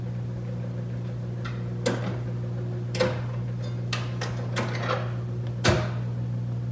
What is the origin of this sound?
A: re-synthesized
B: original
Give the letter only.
B